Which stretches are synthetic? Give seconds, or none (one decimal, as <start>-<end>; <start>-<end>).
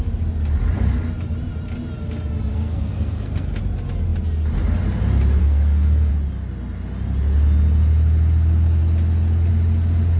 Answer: 2.5-3.6; 5.4-6.1